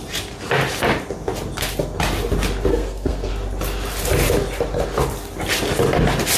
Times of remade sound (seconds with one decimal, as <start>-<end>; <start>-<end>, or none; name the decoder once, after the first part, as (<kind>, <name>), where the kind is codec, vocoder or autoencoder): 2.7-3.3 (codec, SNAC)